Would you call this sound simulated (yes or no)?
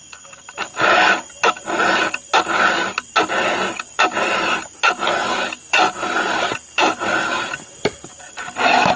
no